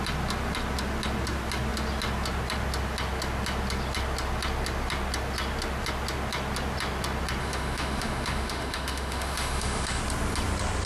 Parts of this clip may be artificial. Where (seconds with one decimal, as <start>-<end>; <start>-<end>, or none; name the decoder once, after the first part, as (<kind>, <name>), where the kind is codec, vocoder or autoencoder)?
7.4-10.0 (autoencoder, DAC-VAE)